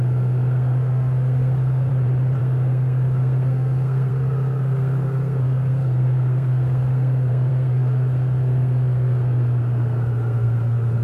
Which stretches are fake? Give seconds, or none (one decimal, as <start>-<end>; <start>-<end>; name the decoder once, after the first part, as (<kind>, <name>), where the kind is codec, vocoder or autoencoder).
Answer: 0.0-1.9 (codec, SNAC); 2.4-11.0